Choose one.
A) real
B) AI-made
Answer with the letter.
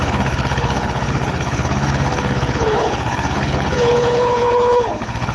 B